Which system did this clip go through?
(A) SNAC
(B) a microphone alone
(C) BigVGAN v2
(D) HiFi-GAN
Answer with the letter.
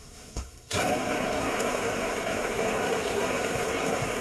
A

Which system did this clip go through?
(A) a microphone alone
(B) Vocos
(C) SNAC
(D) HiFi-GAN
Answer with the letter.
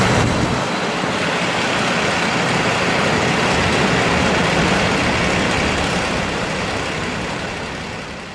A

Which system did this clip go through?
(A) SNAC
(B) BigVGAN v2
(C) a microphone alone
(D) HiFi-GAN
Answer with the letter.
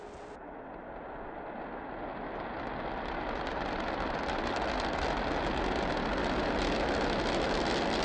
C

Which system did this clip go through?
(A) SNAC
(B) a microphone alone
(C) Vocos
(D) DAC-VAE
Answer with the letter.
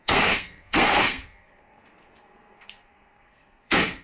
A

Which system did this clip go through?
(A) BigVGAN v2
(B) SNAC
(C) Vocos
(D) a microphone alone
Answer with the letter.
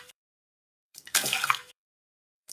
B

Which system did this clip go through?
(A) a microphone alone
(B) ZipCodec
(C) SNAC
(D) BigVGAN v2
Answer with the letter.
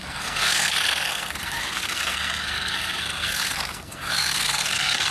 C